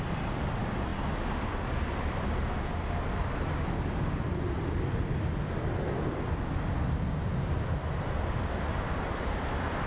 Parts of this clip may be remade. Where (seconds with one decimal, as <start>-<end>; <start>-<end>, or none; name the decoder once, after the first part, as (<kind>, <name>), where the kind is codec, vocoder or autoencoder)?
none